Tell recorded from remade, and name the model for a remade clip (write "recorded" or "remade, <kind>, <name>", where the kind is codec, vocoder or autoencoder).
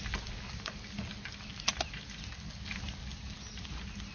recorded